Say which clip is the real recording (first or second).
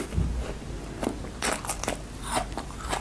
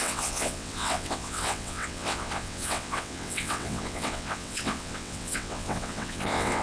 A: first